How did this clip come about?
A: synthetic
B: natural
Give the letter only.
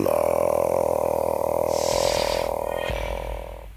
B